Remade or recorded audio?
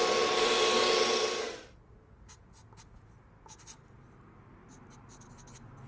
recorded